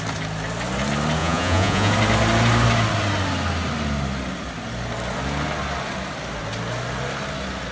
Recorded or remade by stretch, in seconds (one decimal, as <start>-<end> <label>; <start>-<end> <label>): 0.0-1.2 recorded; 1.2-1.9 remade; 1.9-7.7 recorded